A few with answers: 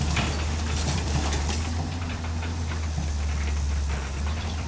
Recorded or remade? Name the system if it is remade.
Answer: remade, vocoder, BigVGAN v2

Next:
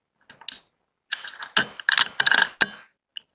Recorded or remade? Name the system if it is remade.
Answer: recorded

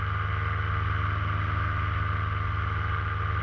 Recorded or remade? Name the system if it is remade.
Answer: recorded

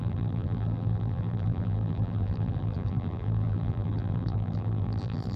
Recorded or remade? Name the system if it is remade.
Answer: remade, vocoder, BigVGAN v2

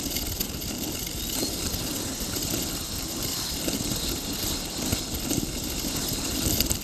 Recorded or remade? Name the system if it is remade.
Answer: remade, vocoder, BigVGAN v2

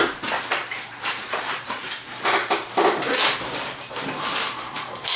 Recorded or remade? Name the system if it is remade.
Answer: remade, vocoder, BigVGAN v2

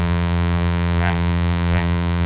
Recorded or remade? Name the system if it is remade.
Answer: remade, vocoder, BigVGAN v2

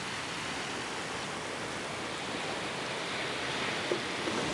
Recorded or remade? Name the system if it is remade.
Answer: recorded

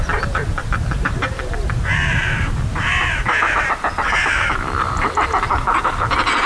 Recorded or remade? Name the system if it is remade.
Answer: remade, vocoder, BigVGAN v2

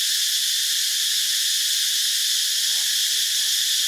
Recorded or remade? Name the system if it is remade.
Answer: recorded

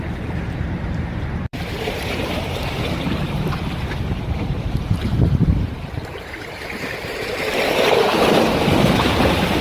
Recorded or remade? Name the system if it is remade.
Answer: remade, vocoder, BigVGAN v2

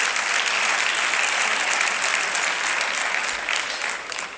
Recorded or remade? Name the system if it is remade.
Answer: remade, vocoder, BigVGAN v2